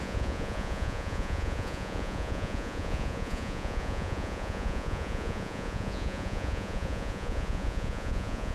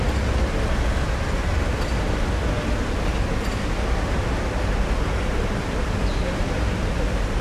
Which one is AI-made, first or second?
first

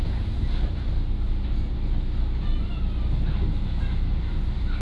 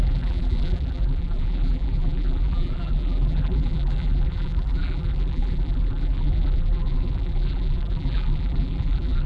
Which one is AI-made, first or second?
second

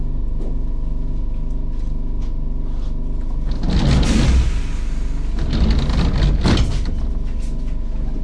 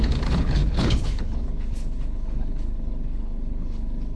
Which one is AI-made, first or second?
second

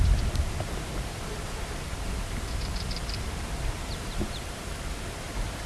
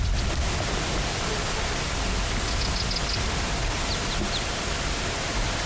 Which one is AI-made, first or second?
first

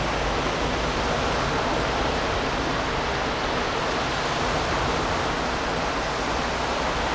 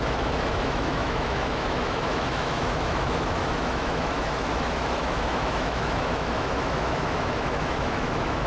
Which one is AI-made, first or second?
second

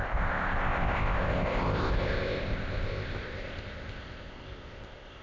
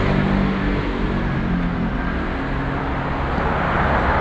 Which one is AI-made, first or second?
first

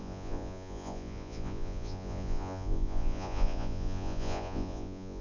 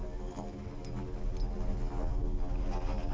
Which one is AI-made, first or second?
first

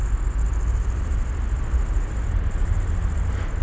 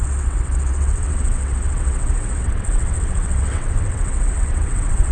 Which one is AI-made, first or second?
second